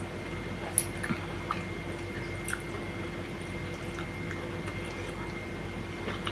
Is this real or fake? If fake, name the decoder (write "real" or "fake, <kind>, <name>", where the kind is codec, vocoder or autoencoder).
real